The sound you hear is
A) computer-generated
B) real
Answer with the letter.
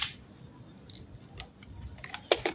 B